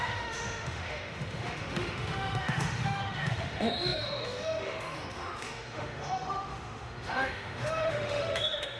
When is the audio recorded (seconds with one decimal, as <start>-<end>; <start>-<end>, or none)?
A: none